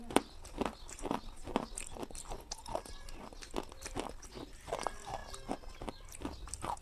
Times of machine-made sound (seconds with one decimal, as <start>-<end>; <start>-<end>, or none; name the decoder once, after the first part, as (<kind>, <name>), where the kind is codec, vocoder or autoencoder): none